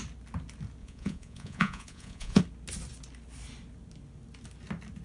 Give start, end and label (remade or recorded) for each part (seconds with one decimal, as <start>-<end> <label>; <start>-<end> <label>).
0.0-0.8 recorded; 0.8-2.4 remade; 2.4-5.0 recorded